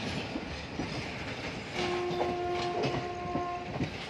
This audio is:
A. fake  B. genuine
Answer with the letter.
B